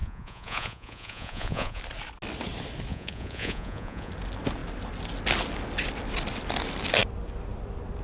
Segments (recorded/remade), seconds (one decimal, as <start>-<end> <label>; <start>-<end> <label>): 0.0-1.8 remade; 1.8-2.9 recorded; 2.9-4.1 remade; 4.1-8.0 recorded